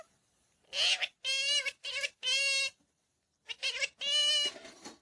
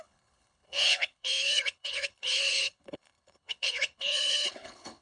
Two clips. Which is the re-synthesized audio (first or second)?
second